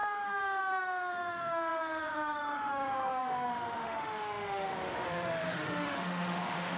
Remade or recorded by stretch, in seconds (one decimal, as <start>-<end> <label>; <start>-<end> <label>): 0.0-6.8 remade

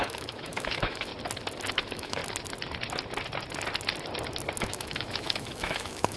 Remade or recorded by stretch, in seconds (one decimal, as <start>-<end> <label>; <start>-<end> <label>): 0.0-1.1 remade; 1.1-1.7 recorded; 1.7-2.2 remade; 2.2-4.6 recorded; 4.6-6.2 remade

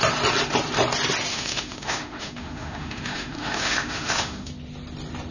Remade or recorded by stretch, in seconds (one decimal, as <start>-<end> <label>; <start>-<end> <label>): 0.0-1.3 recorded; 1.3-4.5 remade; 4.5-5.3 recorded

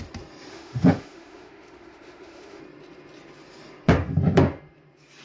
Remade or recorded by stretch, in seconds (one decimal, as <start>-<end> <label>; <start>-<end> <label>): 0.0-0.5 recorded; 0.5-2.6 remade; 2.6-5.2 recorded

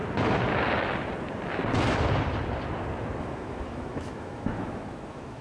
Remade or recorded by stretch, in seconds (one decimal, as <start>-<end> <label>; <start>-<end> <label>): 0.0-3.2 recorded; 3.2-5.4 remade

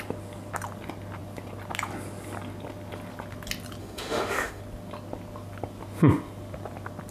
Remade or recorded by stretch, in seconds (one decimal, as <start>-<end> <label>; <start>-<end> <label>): 0.0-3.8 recorded; 3.8-4.6 remade; 4.6-7.1 recorded